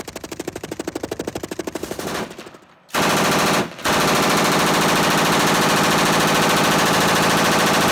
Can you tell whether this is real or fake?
real